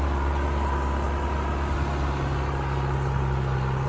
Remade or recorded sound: recorded